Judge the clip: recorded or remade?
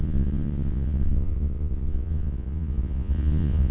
remade